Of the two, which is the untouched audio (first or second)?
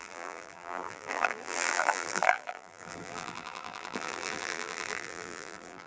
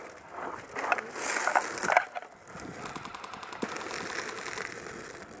second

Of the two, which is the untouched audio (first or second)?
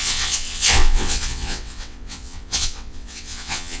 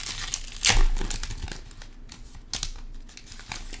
second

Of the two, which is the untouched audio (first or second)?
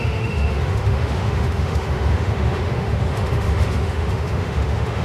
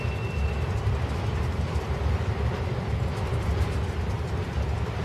second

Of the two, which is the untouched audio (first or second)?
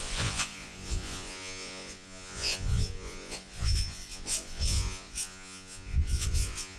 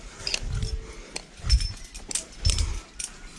second